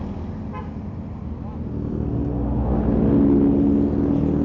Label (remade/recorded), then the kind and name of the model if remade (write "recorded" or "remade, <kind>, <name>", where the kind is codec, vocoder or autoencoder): recorded